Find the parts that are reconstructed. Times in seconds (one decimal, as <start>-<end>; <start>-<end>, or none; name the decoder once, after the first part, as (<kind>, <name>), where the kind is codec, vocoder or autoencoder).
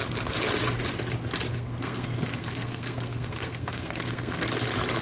1.5-4.5 (codec, SNAC)